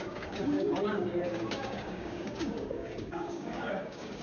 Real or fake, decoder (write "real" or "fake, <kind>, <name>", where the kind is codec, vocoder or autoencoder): fake, codec, DAC